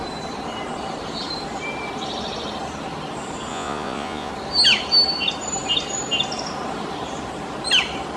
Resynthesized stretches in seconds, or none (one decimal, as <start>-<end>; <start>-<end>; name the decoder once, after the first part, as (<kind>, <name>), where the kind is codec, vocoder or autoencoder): 3.5-4.3 (vocoder, Vocos)